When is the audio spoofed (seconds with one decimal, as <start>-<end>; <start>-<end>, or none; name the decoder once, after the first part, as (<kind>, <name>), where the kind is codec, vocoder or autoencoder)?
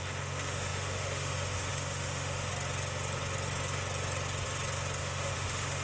0.0-2.5 (autoencoder, DAC-VAE); 5.0-5.8